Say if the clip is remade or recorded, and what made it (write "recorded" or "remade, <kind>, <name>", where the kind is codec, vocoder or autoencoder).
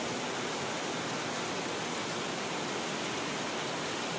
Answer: recorded